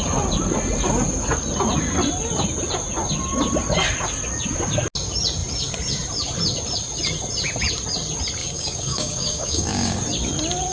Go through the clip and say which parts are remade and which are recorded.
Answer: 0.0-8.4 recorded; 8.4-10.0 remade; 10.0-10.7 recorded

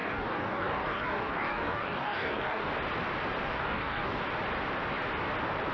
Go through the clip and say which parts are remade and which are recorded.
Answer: 0.0-2.7 remade; 2.7-3.4 recorded; 3.4-4.2 remade; 4.2-5.7 recorded

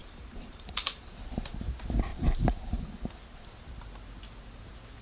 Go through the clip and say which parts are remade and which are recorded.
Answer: 0.0-1.0 remade; 1.0-2.1 recorded; 2.1-2.8 remade; 2.8-5.0 recorded

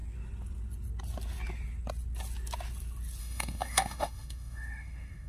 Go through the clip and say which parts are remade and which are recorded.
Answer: 0.0-3.2 recorded; 3.2-5.3 remade

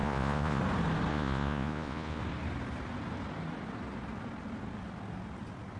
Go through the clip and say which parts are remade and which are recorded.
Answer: 0.0-0.6 remade; 0.6-1.1 recorded; 1.1-2.2 remade; 2.2-5.8 recorded